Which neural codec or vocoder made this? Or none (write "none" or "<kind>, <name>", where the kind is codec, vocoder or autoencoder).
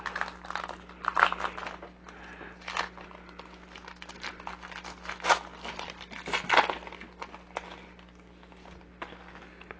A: none